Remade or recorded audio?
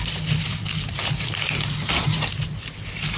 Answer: recorded